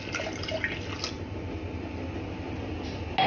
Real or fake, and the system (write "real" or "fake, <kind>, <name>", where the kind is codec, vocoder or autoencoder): real